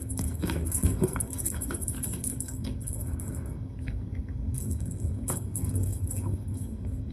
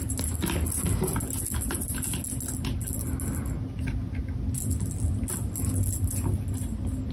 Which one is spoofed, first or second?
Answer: first